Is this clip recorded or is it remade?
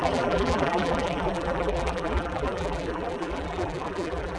remade